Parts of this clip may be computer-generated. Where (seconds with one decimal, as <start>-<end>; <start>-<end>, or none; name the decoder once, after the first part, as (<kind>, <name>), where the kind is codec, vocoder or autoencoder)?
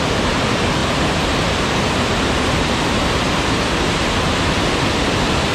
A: 0.8-4.1 (vocoder, BigVGAN v2)